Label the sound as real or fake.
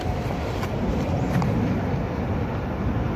real